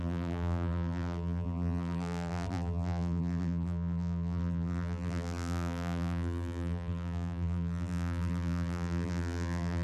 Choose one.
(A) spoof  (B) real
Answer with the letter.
A